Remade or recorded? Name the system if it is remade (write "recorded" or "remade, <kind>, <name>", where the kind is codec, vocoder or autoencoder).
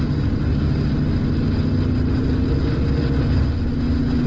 recorded